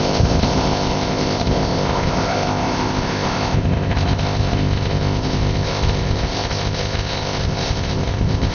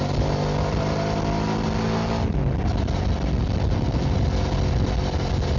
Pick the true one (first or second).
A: second